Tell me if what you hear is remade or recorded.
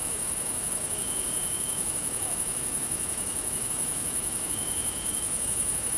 remade